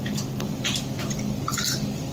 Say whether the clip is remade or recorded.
remade